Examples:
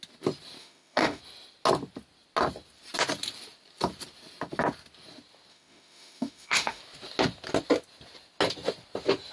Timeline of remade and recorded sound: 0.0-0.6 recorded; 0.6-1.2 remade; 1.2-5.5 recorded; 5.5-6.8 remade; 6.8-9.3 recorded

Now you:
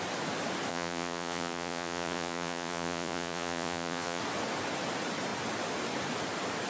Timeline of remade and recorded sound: 0.0-0.7 recorded; 0.7-4.2 remade; 4.2-6.7 recorded

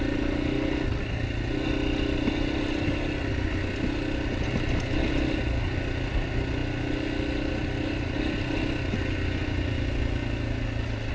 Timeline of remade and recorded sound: 0.0-11.1 recorded

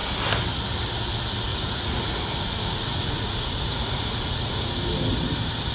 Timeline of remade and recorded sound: 0.0-1.5 recorded; 1.5-4.7 remade; 4.7-5.7 recorded

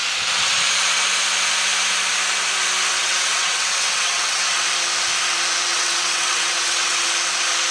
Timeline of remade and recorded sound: 0.0-3.0 recorded; 3.0-4.6 remade; 4.6-5.7 recorded; 5.7-7.1 remade; 7.1-7.7 recorded

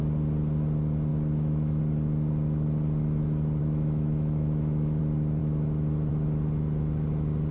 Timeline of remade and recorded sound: 0.0-1.1 recorded; 1.1-1.8 remade; 1.8-3.6 recorded; 3.6-5.0 remade; 5.0-7.5 recorded

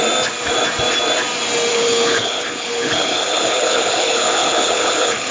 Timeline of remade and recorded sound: 0.0-1.7 recorded; 1.7-5.3 remade

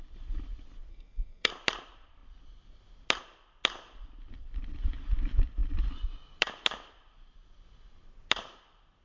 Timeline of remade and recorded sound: 0.0-0.9 recorded; 0.9-1.5 remade; 1.5-9.0 recorded